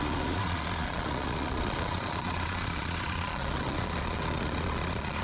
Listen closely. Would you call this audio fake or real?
fake